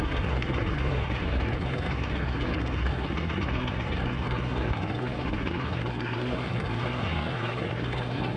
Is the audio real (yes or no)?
no